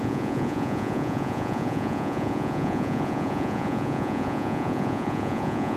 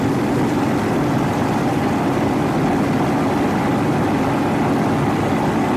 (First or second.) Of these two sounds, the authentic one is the second